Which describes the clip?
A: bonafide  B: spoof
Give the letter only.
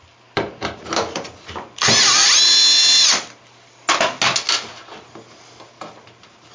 A